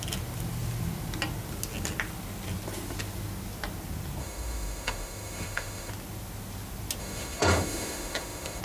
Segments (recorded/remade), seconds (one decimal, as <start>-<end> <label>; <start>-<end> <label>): 0.0-4.2 recorded; 4.2-5.9 remade; 5.9-7.0 recorded; 7.0-8.6 remade

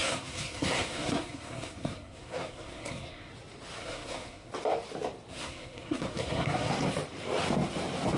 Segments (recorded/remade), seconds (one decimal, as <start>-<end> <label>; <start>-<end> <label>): 0.0-3.3 remade; 3.3-3.8 recorded; 3.8-4.5 remade; 4.5-5.3 recorded; 5.3-6.7 remade; 6.7-8.2 recorded

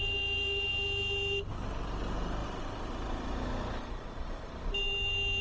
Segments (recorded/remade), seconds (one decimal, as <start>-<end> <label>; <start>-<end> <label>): 0.0-5.4 recorded

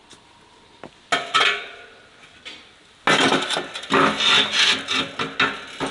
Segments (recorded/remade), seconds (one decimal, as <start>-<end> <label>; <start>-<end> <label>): 0.0-5.9 recorded

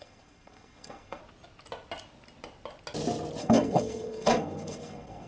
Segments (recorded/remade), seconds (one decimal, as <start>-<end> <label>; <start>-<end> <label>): 0.0-1.2 remade; 1.2-3.4 recorded; 3.4-5.3 remade

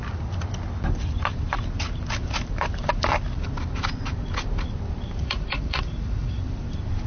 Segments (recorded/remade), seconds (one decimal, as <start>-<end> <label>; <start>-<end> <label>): 0.0-5.2 recorded; 5.2-6.4 remade; 6.4-7.1 recorded

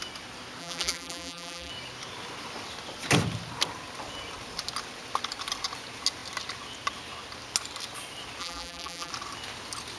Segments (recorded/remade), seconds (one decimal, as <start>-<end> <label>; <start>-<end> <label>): 0.0-0.6 recorded; 0.6-1.7 remade; 1.7-8.4 recorded; 8.4-9.1 remade; 9.1-10.0 recorded

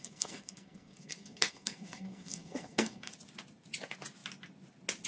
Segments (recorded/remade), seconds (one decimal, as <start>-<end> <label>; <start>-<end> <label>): 0.0-3.1 remade; 3.1-5.1 recorded